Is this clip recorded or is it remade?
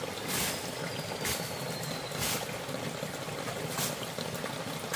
recorded